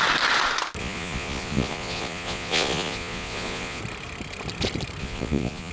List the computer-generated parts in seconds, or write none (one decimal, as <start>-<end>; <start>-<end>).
0.8-3.8; 5.0-5.7